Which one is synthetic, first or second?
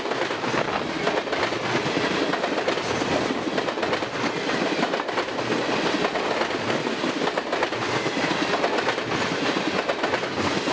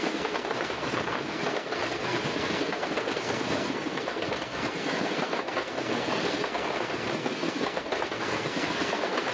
second